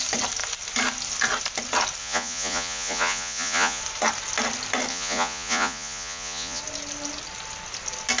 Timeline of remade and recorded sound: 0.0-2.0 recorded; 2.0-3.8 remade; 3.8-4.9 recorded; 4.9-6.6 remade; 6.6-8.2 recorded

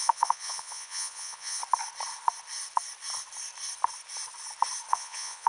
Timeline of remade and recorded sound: 0.0-1.6 remade; 1.6-4.9 recorded; 4.9-5.5 remade

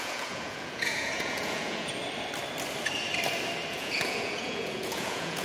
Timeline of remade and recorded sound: 0.0-2.0 remade; 2.0-3.7 recorded; 3.7-5.4 remade

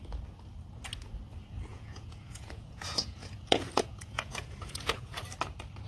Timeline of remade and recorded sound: 0.0-1.7 recorded; 1.7-5.2 remade; 5.2-5.9 recorded

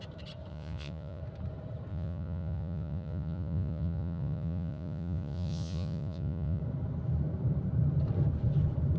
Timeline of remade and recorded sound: 0.0-0.5 recorded; 0.5-1.2 remade; 1.2-1.9 recorded; 1.9-6.6 remade; 6.6-9.0 recorded

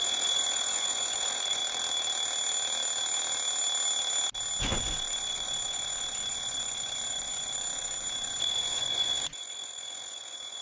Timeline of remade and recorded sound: 0.0-1.6 remade; 1.6-4.6 recorded; 4.6-10.6 remade